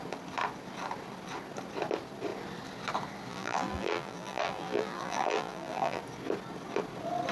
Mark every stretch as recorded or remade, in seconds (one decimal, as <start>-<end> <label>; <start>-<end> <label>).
0.0-3.3 recorded; 3.3-6.0 remade; 6.0-7.3 recorded